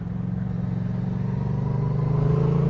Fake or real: real